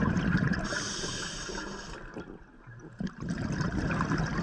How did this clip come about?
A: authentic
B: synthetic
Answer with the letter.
A